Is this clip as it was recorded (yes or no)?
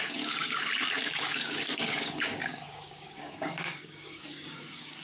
no